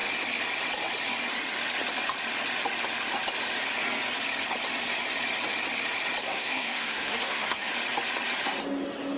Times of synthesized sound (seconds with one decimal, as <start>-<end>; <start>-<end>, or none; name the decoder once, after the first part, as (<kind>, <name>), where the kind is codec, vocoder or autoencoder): 6.2-7.7 (codec, SNAC)